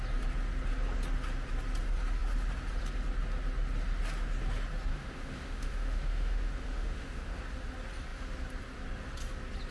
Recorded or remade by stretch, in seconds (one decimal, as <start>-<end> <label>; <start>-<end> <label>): 0.0-4.9 recorded; 4.9-7.4 remade; 7.4-9.7 recorded